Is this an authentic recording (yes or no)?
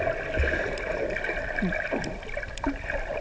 yes